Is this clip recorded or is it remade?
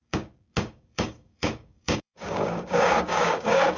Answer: remade